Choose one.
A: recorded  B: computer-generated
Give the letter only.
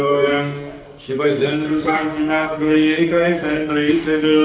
B